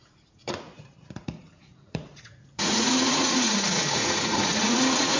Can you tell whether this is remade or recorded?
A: remade